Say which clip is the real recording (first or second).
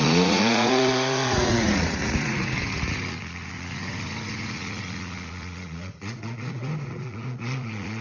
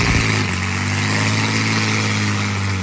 second